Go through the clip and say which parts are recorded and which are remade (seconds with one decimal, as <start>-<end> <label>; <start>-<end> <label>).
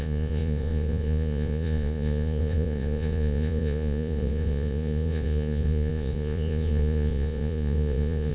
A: 0.0-8.3 remade